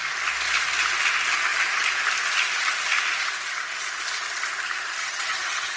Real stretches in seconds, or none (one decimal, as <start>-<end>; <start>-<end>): 0.0-5.0